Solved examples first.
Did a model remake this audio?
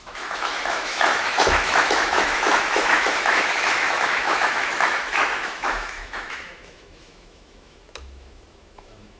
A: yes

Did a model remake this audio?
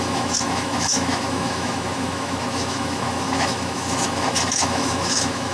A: yes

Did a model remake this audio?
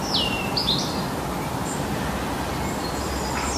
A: no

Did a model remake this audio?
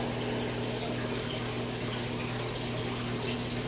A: no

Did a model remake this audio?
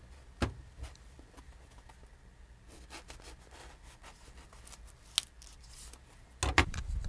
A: no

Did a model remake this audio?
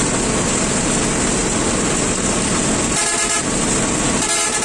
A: no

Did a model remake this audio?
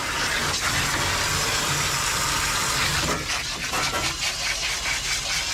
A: no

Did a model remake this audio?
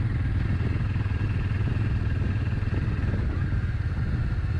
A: no